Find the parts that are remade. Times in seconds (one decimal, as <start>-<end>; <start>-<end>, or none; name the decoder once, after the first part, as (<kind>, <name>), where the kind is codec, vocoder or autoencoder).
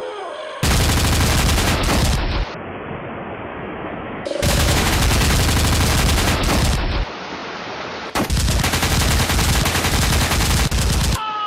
3.5-4.9 (autoencoder, DAC-VAE)